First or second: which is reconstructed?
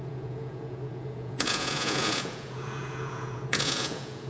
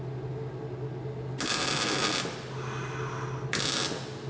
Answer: first